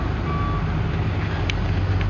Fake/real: real